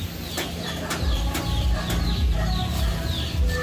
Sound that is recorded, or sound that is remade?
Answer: recorded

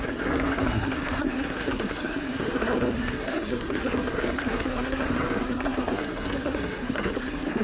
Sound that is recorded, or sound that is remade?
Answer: remade